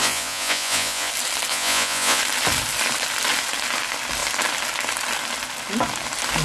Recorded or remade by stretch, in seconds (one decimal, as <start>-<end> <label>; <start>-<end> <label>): 0.0-1.1 remade; 1.1-1.5 recorded; 1.5-2.2 remade; 2.2-6.4 recorded